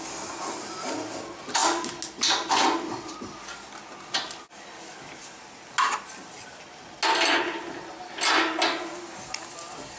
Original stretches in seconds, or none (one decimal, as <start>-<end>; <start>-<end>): 0.0-10.0